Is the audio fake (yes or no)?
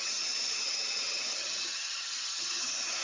yes